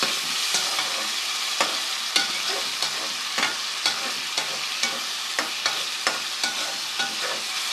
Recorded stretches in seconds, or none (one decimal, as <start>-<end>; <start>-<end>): 0.0-5.0; 5.6-7.7